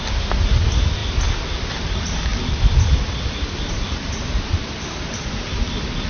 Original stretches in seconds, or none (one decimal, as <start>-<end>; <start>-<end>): 0.0-6.1